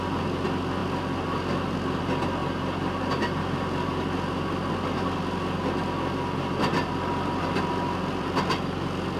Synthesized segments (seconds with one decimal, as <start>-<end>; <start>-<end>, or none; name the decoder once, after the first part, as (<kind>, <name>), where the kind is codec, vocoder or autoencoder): none